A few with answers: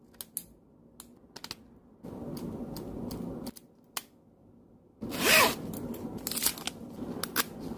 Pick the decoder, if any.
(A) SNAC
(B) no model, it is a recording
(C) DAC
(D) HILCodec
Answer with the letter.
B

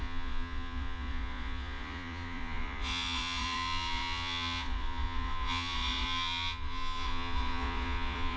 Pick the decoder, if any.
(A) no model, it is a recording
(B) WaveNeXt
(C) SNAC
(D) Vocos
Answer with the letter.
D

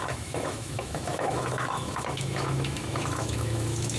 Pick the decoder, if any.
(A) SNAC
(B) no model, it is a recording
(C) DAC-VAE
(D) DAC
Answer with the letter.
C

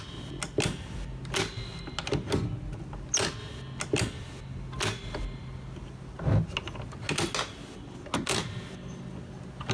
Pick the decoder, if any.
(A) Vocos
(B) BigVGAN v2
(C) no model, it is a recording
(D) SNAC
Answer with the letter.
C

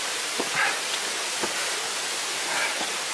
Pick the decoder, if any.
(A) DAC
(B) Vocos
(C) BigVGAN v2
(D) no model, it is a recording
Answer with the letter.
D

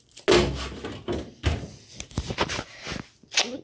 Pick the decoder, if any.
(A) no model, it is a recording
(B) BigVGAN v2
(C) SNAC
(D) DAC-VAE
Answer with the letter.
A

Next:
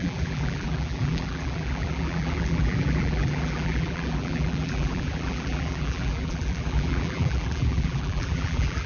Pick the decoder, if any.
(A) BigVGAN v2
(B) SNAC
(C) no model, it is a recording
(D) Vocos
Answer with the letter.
A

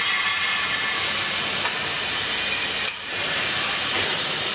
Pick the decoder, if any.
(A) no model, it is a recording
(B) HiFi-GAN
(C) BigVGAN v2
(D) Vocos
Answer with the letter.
A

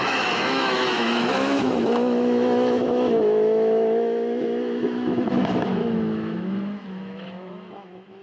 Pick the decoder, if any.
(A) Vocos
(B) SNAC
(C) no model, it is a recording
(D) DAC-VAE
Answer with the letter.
D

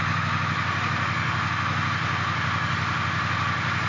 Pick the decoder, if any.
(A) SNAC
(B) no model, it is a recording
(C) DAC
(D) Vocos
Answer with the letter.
B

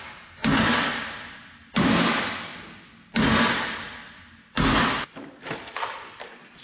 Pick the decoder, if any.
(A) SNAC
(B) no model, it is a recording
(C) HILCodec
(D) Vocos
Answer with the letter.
B